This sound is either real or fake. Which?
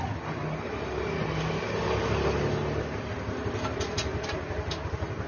real